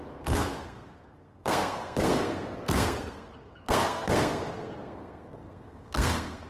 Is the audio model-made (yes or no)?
yes